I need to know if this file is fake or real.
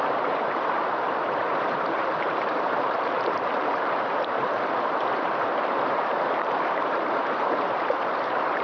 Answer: fake